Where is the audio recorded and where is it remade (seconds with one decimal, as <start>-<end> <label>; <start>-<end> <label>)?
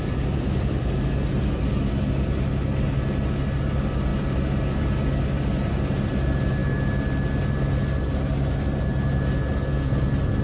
0.0-10.4 recorded